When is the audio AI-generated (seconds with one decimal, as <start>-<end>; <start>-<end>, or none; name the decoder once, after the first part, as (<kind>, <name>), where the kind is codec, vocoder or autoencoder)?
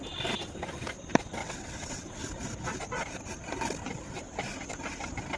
1.4-2.2 (vocoder, WaveNeXt)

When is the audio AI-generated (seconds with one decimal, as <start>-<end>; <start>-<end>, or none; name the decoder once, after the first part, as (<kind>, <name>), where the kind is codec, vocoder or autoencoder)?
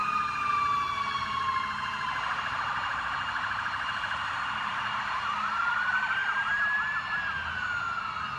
none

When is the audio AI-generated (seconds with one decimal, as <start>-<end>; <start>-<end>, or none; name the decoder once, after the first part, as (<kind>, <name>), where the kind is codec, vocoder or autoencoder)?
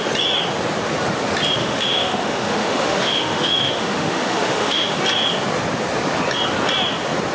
1.6-5.0 (autoencoder, DAC-VAE)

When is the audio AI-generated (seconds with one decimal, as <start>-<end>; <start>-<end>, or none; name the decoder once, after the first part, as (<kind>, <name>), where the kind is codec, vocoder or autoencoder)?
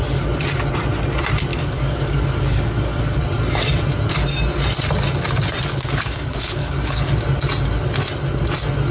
1.5-3.2 (codec, DAC); 5.7-7.1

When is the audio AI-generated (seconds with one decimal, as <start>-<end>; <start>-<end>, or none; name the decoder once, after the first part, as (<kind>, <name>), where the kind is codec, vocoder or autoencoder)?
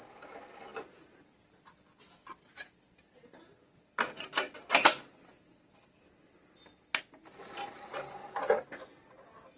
none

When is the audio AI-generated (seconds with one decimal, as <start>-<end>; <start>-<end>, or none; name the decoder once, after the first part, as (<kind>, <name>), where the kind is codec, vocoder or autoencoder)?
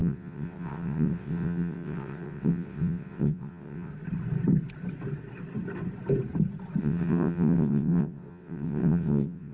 0.0-3.9 (vocoder, WaveNeXt); 6.8-9.5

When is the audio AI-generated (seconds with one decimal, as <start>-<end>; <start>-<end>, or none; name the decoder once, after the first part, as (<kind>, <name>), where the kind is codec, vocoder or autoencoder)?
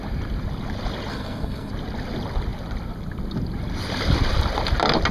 1.1-1.7 (codec, SNAC)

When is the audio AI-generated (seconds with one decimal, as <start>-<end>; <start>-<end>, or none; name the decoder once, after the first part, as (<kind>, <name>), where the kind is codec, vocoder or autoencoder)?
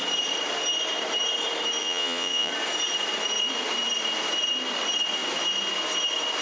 1.8-2.5 (vocoder, Vocos)